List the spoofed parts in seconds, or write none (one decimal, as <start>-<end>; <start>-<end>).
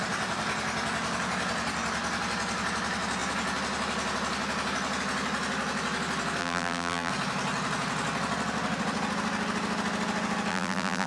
6.4-7.1; 10.5-11.1